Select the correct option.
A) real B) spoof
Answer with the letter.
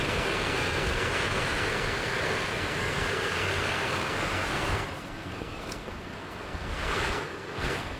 B